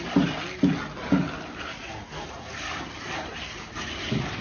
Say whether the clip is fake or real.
real